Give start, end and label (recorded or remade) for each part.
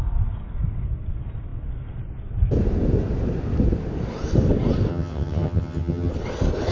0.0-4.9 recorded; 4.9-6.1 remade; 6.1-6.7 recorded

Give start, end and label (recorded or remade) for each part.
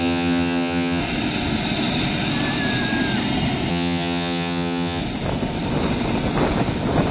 0.0-1.0 remade; 1.0-3.7 recorded; 3.7-5.0 remade; 5.0-7.1 recorded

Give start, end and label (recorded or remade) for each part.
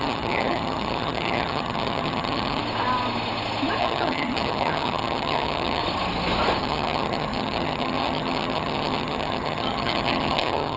0.0-2.6 remade; 2.6-3.8 recorded; 3.8-5.8 remade; 5.8-6.6 recorded; 6.6-10.8 remade